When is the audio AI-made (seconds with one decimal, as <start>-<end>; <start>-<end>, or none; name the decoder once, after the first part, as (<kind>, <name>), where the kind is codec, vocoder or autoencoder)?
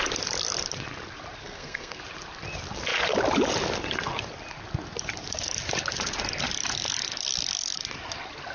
1.4-2.0 (codec, SNAC)